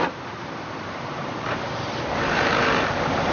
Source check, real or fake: fake